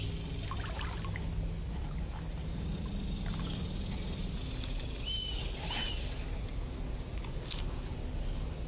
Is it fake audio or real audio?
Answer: real